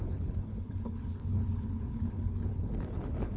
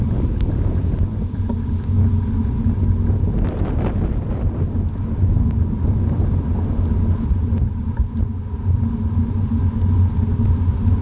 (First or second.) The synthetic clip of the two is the first